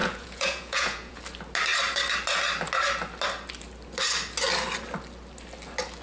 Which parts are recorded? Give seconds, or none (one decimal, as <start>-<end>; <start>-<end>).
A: 1.2-6.0